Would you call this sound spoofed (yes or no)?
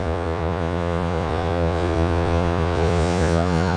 yes